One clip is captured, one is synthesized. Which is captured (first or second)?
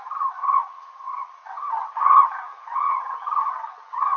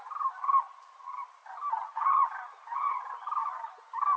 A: second